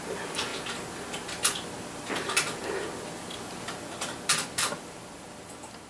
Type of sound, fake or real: real